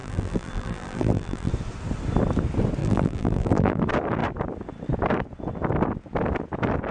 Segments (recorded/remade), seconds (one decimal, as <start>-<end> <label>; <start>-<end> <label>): 0.0-1.5 remade; 1.5-2.8 recorded; 2.8-3.8 remade; 3.8-6.9 recorded